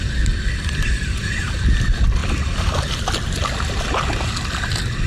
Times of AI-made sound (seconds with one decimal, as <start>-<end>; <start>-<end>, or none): none